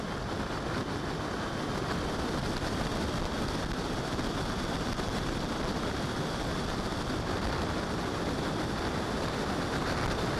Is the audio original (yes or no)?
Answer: yes